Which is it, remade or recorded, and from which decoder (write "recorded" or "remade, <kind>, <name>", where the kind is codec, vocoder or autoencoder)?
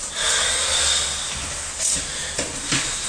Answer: recorded